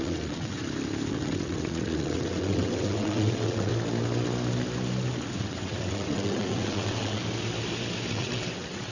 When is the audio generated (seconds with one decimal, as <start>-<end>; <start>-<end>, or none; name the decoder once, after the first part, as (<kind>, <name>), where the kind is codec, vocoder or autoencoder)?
0.0-0.6 (vocoder, WaveNeXt); 1.1-3.7; 5.4-7.2; 8.1-8.9